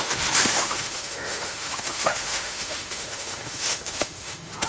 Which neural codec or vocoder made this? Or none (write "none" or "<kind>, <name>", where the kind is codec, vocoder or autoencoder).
autoencoder, DAC-VAE